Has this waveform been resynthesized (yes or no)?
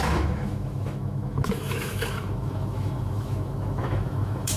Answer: yes